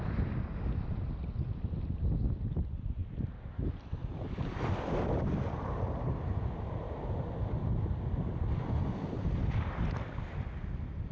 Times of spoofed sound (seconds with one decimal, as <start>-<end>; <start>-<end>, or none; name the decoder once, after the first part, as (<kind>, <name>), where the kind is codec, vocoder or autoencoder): none